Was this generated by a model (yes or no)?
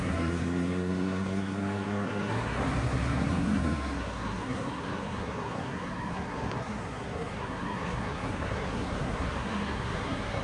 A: yes